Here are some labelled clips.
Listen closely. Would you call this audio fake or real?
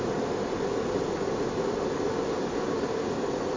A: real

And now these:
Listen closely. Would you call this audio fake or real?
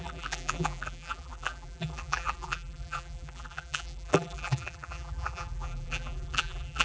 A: fake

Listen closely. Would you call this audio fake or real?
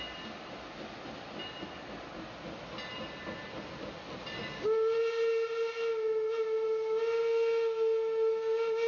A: real